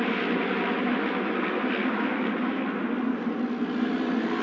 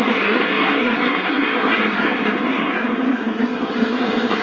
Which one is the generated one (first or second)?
second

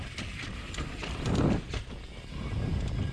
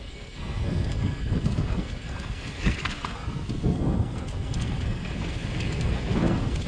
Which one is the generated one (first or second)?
second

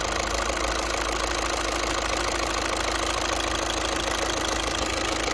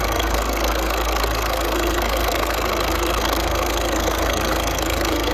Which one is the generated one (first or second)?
second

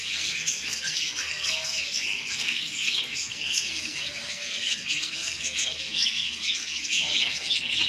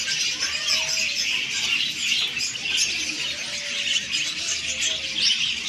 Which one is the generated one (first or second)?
first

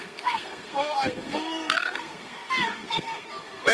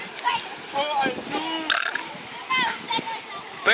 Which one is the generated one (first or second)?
first